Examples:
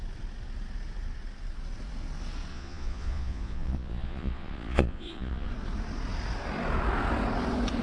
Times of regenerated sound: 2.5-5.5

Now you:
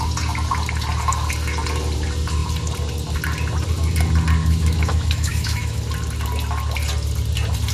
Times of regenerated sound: 4.4-5.8

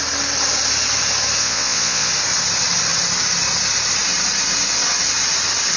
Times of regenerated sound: 1.4-2.1

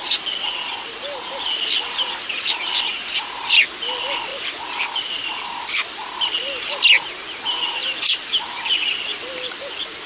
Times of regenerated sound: 4.3-6.3

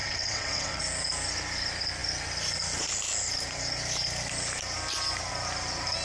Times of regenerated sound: 0.0-0.8